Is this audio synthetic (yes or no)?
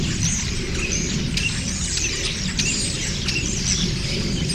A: no